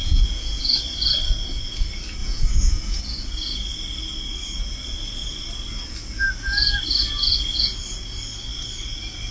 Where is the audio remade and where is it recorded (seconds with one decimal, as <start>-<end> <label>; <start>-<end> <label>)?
0.0-0.6 remade; 0.6-2.2 recorded; 2.2-3.0 remade; 3.0-9.3 recorded

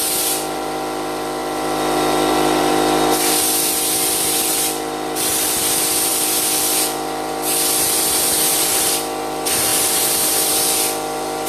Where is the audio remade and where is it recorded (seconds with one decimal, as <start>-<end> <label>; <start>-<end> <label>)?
0.0-11.5 remade

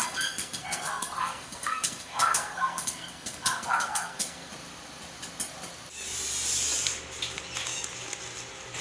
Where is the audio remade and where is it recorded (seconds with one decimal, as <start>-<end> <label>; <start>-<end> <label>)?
0.0-4.5 remade; 4.5-8.8 recorded

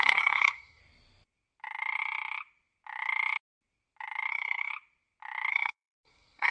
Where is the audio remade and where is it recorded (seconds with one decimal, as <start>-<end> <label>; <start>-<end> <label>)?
0.0-0.8 remade; 0.8-4.3 recorded; 4.3-4.7 remade; 4.7-5.5 recorded; 5.5-6.5 remade

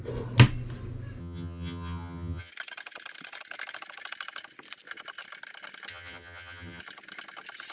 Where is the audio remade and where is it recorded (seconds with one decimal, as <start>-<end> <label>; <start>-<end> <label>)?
0.0-1.2 recorded; 1.2-2.5 remade; 2.5-5.9 recorded; 5.9-6.8 remade; 6.8-7.7 recorded

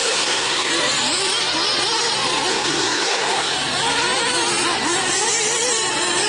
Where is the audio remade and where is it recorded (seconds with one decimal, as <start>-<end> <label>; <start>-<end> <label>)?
0.0-0.7 remade; 0.7-2.5 recorded; 2.5-3.5 remade; 3.5-6.3 recorded

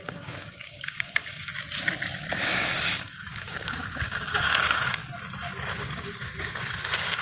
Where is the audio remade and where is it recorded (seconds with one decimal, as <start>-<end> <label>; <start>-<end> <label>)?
0.0-1.5 remade; 1.5-2.3 recorded; 2.3-5.0 remade; 5.0-5.8 recorded; 5.8-7.2 remade